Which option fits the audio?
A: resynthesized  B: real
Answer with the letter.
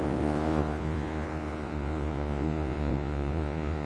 A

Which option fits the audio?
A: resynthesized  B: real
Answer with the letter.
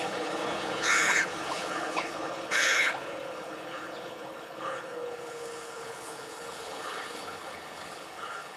A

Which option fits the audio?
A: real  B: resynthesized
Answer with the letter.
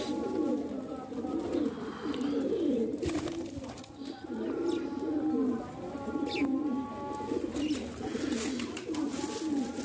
A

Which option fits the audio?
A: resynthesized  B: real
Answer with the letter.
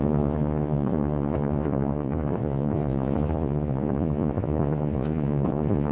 A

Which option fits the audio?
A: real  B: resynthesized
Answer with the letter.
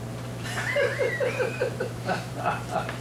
B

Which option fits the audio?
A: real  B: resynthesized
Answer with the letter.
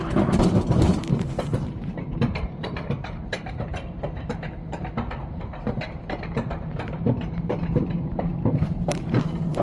B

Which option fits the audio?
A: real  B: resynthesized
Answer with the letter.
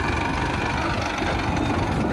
A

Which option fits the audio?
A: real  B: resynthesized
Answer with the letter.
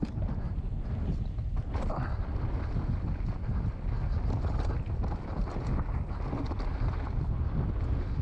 A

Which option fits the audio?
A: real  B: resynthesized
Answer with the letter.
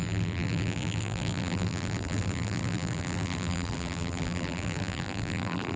B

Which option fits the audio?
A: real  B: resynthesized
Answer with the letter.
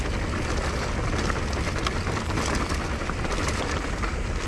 A